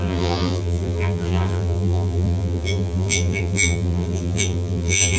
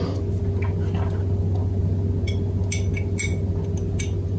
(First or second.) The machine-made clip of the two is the first